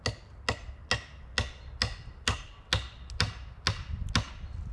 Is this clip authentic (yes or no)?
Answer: yes